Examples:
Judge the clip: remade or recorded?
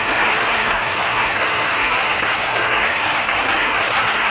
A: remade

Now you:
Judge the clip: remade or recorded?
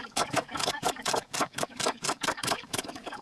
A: remade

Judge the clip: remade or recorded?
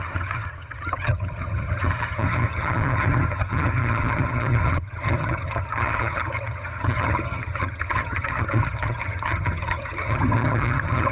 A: remade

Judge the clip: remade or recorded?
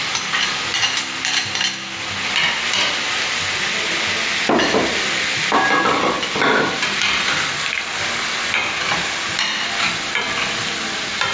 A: recorded